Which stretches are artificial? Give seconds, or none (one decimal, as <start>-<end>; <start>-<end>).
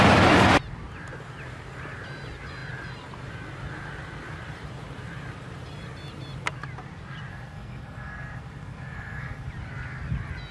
7.3-9.5